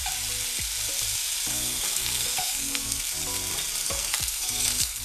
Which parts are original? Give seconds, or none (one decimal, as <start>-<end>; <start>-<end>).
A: 0.0-1.5; 3.1-3.8